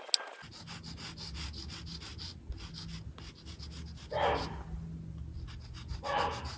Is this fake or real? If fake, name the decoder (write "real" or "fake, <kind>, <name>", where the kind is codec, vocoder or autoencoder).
real